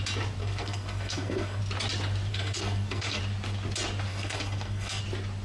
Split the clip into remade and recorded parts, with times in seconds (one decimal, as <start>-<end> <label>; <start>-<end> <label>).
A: 0.0-0.4 recorded; 0.4-1.6 remade; 1.6-2.3 recorded; 2.3-3.2 remade; 3.2-4.1 recorded; 4.1-5.0 remade; 5.0-5.4 recorded